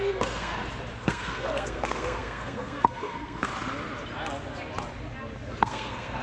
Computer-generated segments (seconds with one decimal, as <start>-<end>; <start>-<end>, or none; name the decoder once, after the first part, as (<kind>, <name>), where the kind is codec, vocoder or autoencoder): 0.0-0.5 (codec, SNAC); 1.0-3.5; 5.5-6.2